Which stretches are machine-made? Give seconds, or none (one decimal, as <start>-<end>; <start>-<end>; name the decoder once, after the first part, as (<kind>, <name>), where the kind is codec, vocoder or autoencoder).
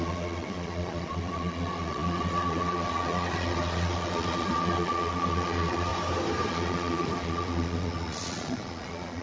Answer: 0.0-5.9 (vocoder, Vocos); 6.5-9.2